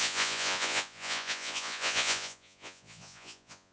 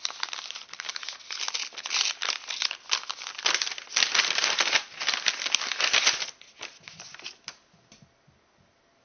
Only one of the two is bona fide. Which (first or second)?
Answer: second